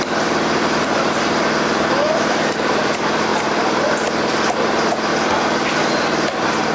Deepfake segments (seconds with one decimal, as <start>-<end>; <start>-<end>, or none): 0.0-5.1; 5.8-6.7